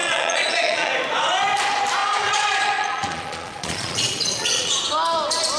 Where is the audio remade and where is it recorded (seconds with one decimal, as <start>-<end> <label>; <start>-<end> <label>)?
0.0-0.9 remade; 0.9-2.0 recorded; 2.0-4.8 remade; 4.8-5.6 recorded